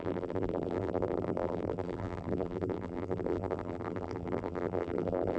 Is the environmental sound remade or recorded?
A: remade